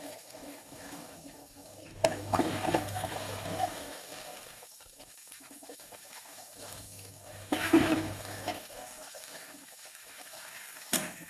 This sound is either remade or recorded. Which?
remade